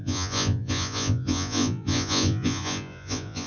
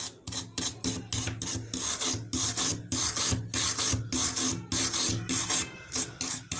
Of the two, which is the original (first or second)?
second